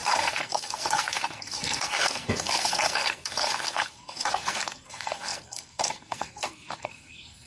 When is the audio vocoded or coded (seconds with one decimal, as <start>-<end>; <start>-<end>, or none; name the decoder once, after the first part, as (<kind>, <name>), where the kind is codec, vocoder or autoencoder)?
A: 0.0-7.5 (codec, SNAC)